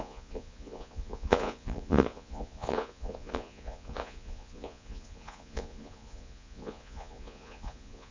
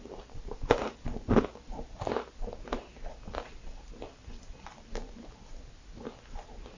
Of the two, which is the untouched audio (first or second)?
second